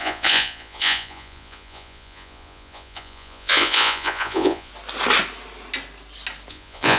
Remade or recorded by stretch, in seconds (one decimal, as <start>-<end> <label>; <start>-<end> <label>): 0.0-4.7 remade; 4.7-6.5 recorded; 6.5-7.0 remade